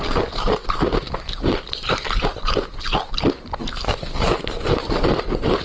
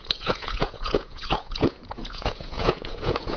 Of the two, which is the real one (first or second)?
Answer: first